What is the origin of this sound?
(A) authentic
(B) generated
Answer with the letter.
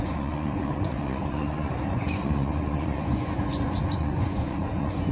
B